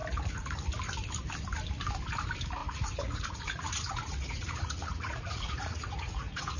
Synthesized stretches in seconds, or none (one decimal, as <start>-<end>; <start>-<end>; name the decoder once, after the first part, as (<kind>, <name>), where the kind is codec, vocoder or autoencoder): 2.6-6.6 (vocoder, Vocos)

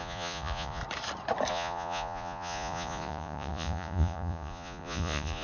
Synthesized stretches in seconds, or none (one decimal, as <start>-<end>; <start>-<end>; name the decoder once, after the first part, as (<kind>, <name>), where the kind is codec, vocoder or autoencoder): 0.0-0.8 (vocoder, Vocos); 1.5-5.4